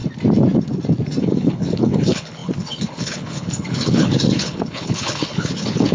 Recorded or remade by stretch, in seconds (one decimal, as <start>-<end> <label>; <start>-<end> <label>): 0.0-1.2 recorded; 1.2-5.9 remade